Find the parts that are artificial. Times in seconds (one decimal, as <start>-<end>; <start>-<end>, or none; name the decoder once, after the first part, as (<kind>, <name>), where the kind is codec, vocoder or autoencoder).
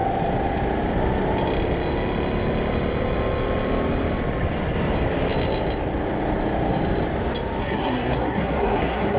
7.6-9.2 (codec, SNAC)